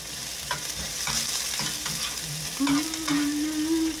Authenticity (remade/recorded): recorded